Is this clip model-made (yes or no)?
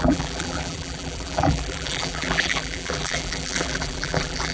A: yes